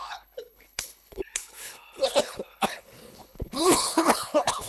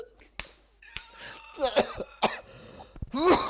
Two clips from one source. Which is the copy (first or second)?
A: first